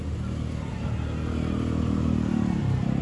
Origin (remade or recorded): recorded